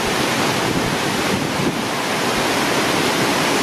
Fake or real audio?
real